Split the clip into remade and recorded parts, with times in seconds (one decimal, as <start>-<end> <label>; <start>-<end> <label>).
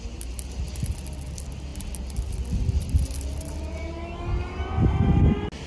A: 0.0-5.7 recorded